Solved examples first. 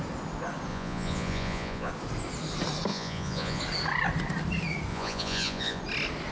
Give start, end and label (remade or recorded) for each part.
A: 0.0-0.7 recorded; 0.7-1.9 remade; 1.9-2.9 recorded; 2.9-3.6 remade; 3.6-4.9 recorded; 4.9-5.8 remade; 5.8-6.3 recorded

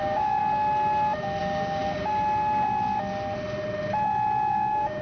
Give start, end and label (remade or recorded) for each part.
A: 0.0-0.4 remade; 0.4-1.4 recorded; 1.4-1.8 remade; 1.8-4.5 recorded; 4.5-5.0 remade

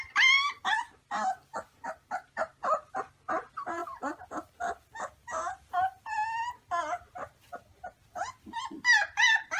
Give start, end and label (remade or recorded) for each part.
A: 0.0-3.8 recorded; 3.8-4.5 remade; 4.5-9.6 recorded

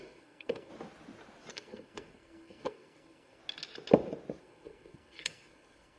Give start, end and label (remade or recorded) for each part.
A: 0.0-0.7 remade; 0.7-1.5 recorded; 1.5-3.4 remade; 3.4-4.4 recorded; 4.4-6.0 remade

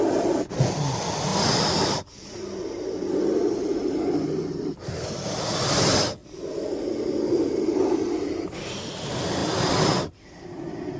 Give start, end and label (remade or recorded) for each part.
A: 0.0-1.3 recorded; 1.3-5.7 remade; 5.7-11.0 recorded

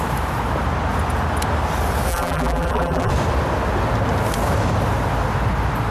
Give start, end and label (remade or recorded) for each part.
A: 0.0-2.1 recorded; 2.1-3.1 remade; 3.1-5.9 recorded

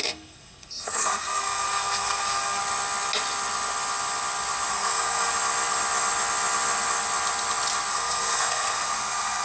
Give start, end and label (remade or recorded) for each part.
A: 0.0-2.6 remade; 2.6-4.7 recorded; 4.7-5.3 remade; 5.3-7.9 recorded; 7.9-9.4 remade